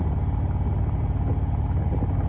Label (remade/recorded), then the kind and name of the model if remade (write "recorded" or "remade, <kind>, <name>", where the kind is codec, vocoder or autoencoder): recorded